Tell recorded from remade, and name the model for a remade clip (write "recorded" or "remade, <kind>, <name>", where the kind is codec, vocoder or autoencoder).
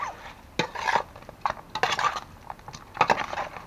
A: recorded